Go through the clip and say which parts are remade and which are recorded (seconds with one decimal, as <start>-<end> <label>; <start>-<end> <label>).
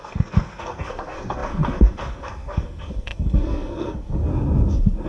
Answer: 0.0-4.3 remade; 4.3-5.1 recorded